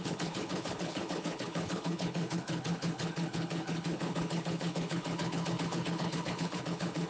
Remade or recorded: remade